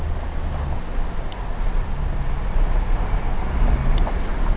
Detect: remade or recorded recorded